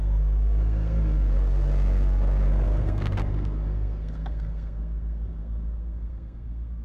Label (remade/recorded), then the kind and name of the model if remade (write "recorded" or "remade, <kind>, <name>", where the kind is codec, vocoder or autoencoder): remade, codec, SNAC